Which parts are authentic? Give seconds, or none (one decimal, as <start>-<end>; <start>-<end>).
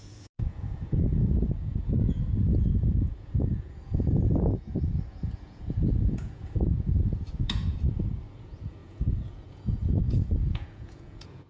none